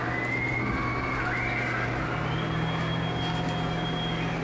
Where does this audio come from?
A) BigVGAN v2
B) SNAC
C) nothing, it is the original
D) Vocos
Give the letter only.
C